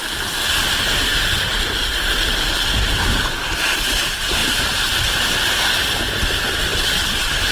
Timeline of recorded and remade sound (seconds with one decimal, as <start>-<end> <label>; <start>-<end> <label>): 0.0-7.5 recorded